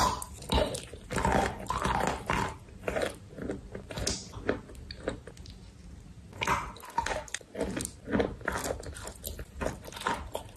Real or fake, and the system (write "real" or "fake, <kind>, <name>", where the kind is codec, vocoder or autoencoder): real